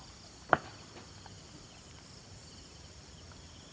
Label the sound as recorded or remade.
remade